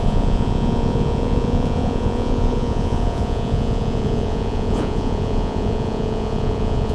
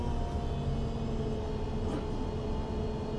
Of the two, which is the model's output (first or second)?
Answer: first